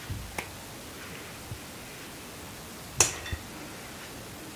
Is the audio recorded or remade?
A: recorded